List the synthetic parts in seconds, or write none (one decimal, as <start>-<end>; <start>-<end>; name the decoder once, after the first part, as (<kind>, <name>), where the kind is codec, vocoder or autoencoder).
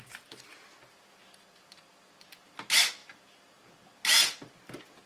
none